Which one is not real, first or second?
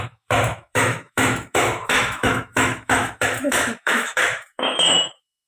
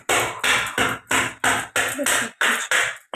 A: first